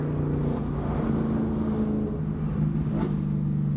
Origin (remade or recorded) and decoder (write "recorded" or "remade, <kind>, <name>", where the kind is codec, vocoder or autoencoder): recorded